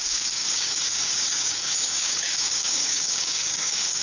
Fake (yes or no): yes